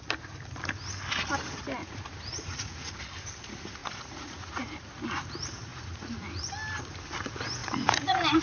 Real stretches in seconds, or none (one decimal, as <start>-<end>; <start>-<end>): 0.0-1.8; 2.9-3.8; 4.9-5.7; 6.4-7.6